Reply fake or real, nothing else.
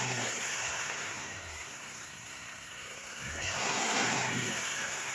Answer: fake